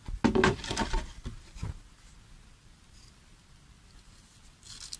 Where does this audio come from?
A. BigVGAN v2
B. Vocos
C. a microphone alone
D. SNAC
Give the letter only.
C